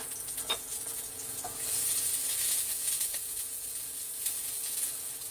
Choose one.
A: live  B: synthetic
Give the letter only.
B